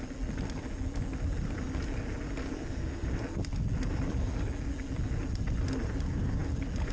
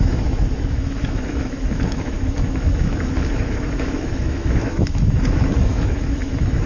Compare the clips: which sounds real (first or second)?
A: first